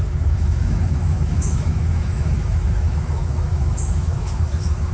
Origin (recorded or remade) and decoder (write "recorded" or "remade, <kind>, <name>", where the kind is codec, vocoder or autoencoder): remade, autoencoder, DAC-VAE